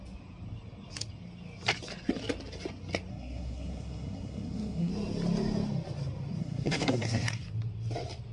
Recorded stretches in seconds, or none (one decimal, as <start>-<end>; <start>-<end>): 0.0-3.1; 4.9-6.4; 7.4-8.3